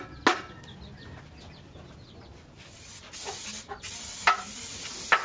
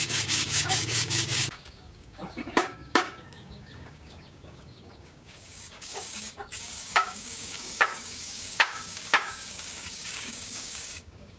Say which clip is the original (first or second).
first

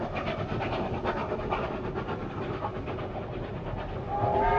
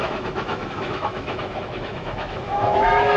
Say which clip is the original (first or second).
first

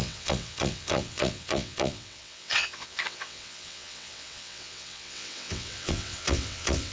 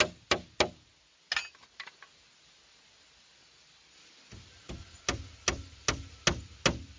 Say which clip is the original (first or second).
second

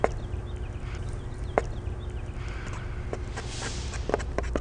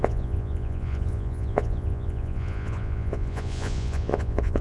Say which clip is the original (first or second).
first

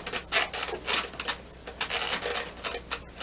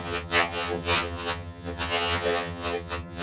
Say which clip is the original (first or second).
first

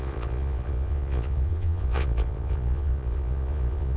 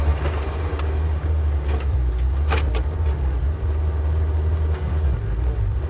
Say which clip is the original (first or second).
second